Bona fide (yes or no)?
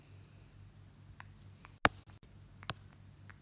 yes